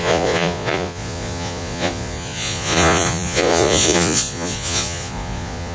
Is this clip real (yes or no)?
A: no